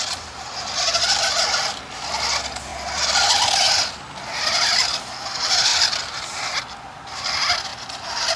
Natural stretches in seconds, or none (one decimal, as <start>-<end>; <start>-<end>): 0.0-5.7; 6.6-8.4